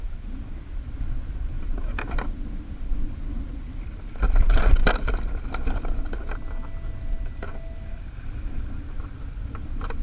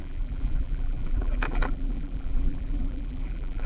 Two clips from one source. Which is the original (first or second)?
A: first